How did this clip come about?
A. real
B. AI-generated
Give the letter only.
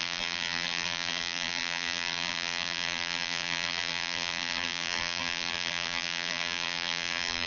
B